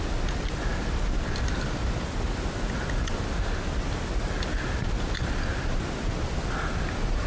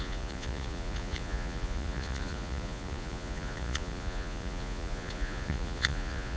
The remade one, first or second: second